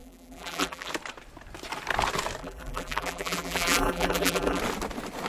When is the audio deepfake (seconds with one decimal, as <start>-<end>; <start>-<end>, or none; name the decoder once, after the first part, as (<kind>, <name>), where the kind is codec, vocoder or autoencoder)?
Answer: 0.0-0.9 (vocoder, BigVGAN v2); 2.4-4.6